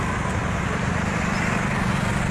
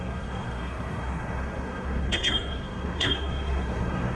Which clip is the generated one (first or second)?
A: second